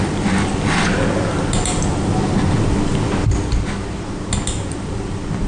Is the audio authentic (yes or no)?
yes